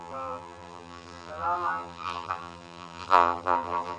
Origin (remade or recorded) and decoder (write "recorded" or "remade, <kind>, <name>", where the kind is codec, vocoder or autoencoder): remade, vocoder, BigVGAN v2